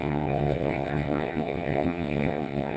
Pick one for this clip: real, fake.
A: fake